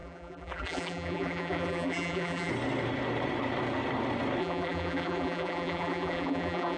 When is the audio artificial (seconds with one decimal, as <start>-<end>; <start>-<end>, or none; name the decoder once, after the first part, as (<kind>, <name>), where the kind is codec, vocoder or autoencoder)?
0.0-2.5 (vocoder, BigVGAN v2); 4.4-6.8